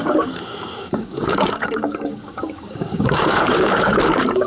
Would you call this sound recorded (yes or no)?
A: no